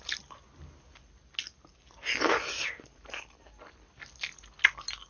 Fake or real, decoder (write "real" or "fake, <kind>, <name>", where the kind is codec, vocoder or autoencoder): real